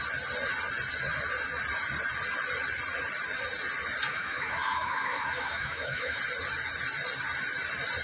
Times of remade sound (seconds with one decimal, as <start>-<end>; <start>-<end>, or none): 4.1-6.2